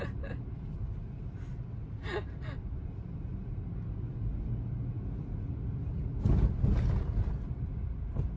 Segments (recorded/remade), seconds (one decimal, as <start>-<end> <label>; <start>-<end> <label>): 0.0-8.4 recorded